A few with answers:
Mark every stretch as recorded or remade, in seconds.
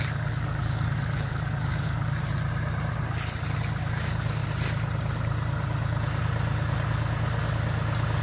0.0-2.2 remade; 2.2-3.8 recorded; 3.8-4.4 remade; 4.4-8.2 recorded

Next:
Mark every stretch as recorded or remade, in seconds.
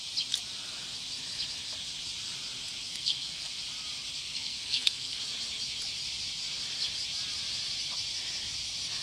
0.0-2.9 recorded; 2.9-3.6 remade; 3.6-4.2 recorded; 4.2-5.2 remade; 5.2-9.0 recorded